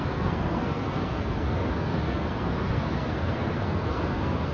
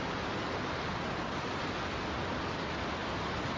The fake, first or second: first